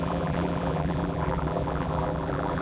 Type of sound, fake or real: fake